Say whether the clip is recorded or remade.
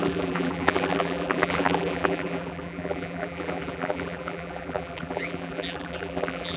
remade